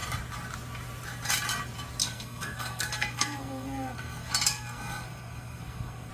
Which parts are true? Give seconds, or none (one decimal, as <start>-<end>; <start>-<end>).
0.0-2.0

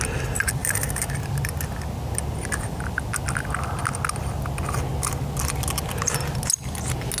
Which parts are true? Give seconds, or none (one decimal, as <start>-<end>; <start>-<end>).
0.0-7.2